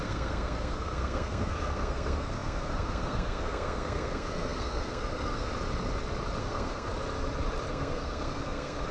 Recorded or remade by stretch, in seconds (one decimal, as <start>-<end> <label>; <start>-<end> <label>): 0.0-5.5 remade; 5.5-6.4 recorded; 6.4-6.9 remade; 6.9-7.7 recorded; 7.7-8.9 remade